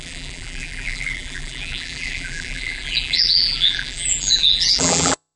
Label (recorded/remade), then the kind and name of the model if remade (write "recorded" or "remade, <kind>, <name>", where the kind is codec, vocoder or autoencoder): remade, vocoder, BigVGAN v2